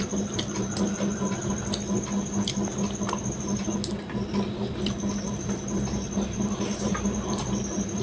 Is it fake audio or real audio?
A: real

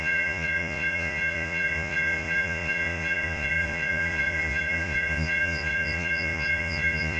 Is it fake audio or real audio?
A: fake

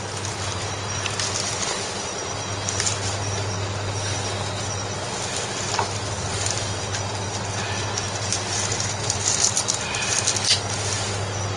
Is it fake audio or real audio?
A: real